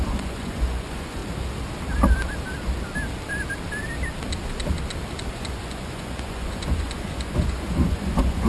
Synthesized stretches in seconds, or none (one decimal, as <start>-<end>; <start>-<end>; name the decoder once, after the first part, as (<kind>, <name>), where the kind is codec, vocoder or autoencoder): 0.0-1.2 (vocoder, Vocos); 5.3-8.5